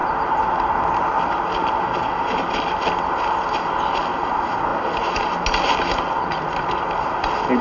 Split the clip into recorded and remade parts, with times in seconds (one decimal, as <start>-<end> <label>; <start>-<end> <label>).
0.0-7.6 recorded